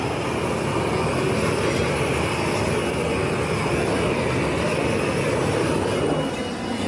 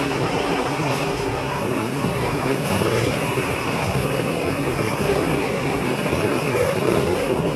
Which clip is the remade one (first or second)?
second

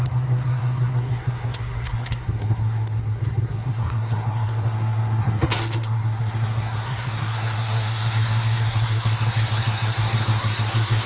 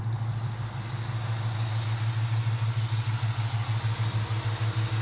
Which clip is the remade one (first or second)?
first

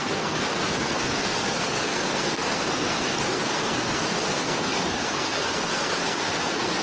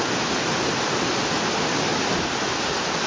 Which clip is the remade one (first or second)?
first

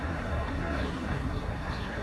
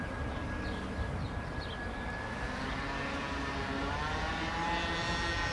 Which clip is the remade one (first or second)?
first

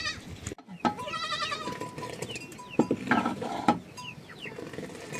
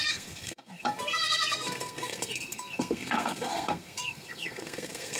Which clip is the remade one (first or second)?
second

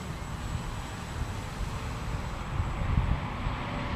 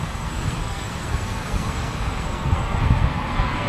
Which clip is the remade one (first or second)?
second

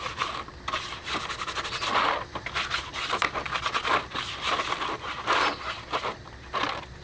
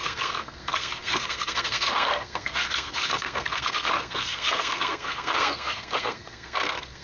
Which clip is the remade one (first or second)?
second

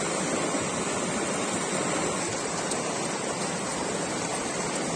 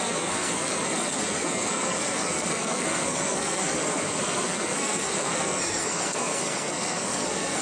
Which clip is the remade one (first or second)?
second